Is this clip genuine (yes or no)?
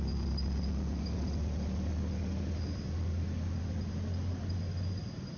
yes